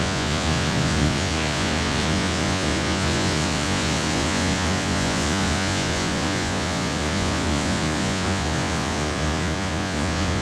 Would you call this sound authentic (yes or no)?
no